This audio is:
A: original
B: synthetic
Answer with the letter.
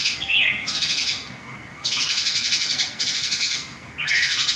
B